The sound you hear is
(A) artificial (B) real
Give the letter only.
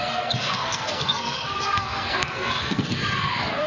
A